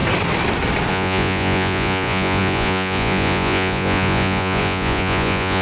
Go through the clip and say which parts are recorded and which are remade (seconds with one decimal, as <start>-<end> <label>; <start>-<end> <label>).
0.0-0.9 recorded; 0.9-5.6 remade